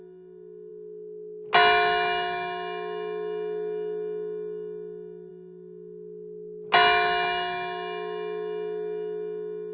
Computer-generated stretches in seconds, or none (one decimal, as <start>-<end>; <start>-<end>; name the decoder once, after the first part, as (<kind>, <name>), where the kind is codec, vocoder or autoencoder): none

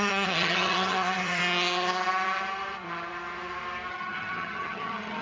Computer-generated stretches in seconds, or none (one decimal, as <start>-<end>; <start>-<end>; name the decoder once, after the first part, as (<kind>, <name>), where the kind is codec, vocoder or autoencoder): 0.0-1.4 (vocoder, HiFi-GAN); 3.9-5.2